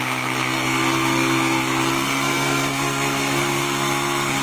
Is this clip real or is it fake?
fake